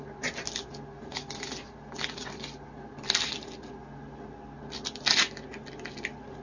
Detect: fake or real real